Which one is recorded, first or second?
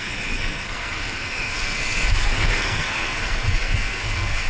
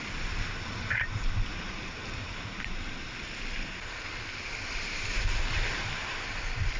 second